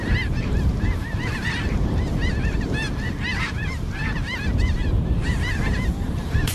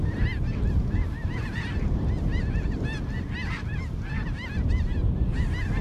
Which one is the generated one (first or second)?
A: first